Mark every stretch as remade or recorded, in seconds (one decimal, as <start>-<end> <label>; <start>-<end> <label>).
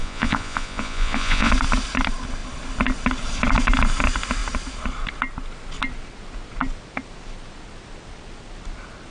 0.0-1.5 remade; 1.5-9.1 recorded